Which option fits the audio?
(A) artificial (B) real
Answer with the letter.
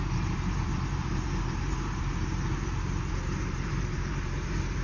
A